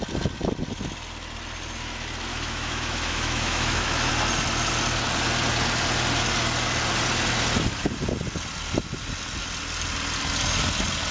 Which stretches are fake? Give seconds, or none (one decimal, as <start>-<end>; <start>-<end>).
2.3-4.1

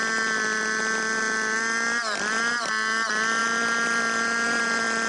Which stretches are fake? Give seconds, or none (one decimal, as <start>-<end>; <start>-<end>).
none

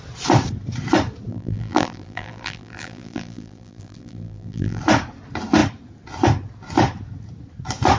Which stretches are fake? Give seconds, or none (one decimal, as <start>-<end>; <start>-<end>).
1.3-4.8

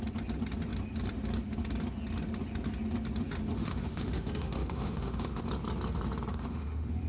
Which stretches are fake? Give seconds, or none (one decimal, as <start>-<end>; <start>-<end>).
3.5-5.4; 6.3-7.1

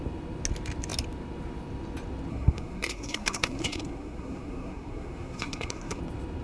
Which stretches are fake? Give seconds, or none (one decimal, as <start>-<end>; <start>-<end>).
2.3-6.0